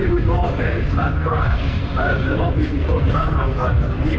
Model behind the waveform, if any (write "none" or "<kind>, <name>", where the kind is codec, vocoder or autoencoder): codec, SNAC